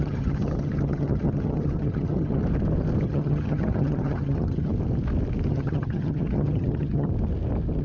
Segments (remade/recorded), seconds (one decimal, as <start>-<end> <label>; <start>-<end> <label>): 0.0-2.4 remade; 2.4-3.0 recorded; 3.0-4.7 remade; 4.7-5.5 recorded; 5.5-7.1 remade; 7.1-7.8 recorded